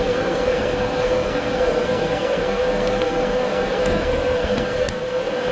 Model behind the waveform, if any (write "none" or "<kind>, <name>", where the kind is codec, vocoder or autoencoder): codec, SNAC